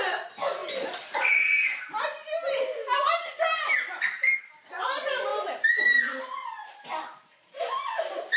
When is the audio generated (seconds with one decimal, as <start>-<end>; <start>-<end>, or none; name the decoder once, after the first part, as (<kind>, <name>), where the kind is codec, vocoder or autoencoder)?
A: 0.6-1.4 (vocoder, BigVGAN v2)

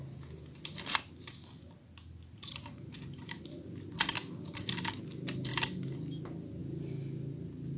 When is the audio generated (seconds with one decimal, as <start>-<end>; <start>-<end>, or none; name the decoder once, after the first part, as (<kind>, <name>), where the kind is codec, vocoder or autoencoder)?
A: none

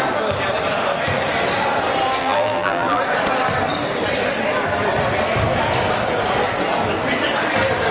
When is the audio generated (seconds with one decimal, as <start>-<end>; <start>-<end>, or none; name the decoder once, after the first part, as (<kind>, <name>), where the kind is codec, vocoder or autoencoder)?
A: 2.2-3.0 (vocoder, BigVGAN v2)

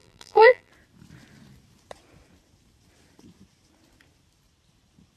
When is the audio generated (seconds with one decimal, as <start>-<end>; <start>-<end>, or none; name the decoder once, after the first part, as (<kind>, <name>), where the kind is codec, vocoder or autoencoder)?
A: 0.0-0.7 (vocoder, BigVGAN v2)